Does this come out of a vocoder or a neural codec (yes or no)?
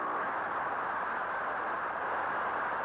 no